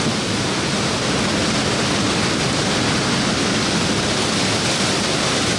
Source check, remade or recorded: recorded